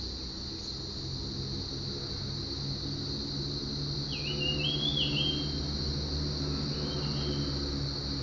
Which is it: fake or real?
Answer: real